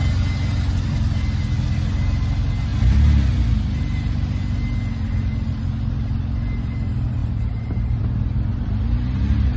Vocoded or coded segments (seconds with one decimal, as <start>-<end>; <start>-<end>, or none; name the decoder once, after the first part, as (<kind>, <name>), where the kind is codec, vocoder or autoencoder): 7.2-8.0 (vocoder, BigVGAN v2)